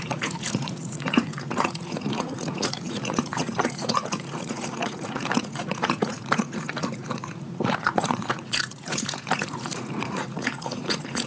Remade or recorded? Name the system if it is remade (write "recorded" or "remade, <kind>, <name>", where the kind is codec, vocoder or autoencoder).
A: remade, vocoder, Vocos